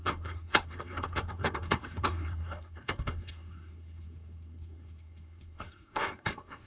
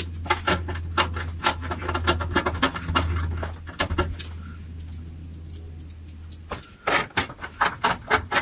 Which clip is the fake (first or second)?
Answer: first